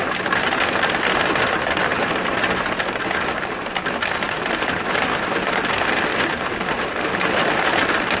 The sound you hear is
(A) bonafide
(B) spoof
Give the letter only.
A